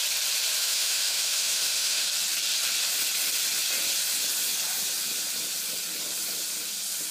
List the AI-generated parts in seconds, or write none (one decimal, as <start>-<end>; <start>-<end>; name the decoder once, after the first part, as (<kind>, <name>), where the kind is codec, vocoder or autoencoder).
0.6-2.1 (autoencoder, DAC-VAE)